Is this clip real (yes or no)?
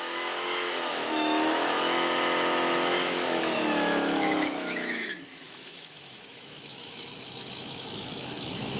no